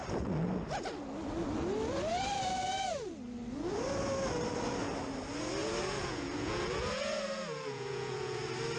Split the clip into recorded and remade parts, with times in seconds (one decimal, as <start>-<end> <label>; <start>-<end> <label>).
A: 0.0-5.6 recorded; 5.6-8.4 remade; 8.4-8.8 recorded

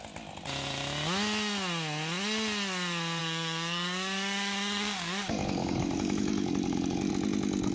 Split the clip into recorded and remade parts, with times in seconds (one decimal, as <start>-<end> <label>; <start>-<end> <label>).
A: 0.0-3.2 recorded; 3.2-7.1 remade; 7.1-7.7 recorded

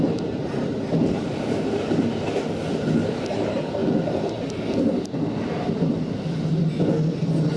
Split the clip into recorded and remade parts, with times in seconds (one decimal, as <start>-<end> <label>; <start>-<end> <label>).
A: 0.0-0.4 recorded; 0.4-2.4 remade; 2.4-7.6 recorded

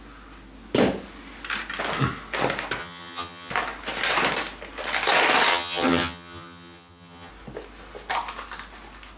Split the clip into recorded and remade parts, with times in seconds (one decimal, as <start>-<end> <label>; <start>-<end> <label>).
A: 0.0-2.8 recorded; 2.8-3.5 remade; 3.5-5.5 recorded; 5.5-7.3 remade; 7.3-9.2 recorded

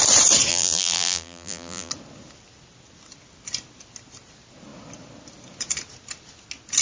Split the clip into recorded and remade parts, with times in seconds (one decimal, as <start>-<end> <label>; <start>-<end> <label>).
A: 0.0-0.5 recorded; 0.5-1.9 remade; 1.9-6.8 recorded

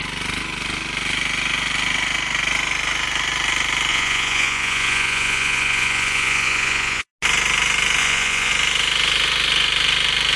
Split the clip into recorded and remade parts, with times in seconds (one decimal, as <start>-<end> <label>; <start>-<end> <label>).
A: 0.0-3.9 recorded; 3.9-7.1 remade; 7.1-8.0 recorded; 8.0-8.5 remade; 8.5-10.4 recorded

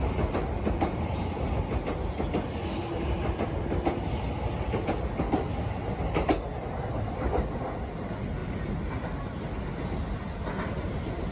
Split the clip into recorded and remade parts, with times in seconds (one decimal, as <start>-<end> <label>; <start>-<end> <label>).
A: 0.0-11.3 recorded

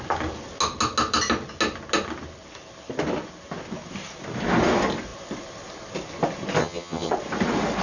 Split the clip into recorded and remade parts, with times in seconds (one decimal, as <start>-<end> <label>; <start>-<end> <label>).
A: 0.0-6.6 recorded; 6.6-7.1 remade; 7.1-7.8 recorded